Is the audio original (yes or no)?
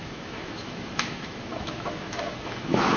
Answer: no